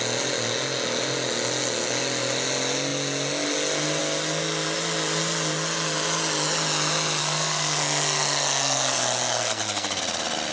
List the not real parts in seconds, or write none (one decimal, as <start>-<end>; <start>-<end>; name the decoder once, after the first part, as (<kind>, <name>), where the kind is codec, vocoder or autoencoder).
7.2-10.0 (codec, SNAC)